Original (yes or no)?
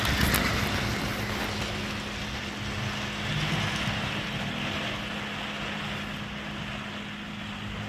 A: yes